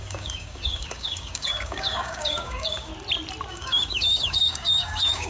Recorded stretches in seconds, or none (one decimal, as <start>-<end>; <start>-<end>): 2.9-3.5